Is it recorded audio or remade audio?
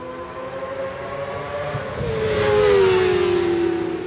recorded